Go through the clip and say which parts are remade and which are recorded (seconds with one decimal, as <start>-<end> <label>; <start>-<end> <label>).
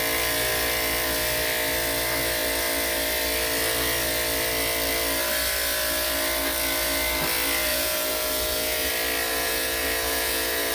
0.0-7.7 recorded; 7.7-8.9 remade; 8.9-9.3 recorded; 9.3-10.7 remade